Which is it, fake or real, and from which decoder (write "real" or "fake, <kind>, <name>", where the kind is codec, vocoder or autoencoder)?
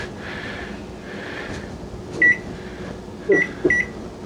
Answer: real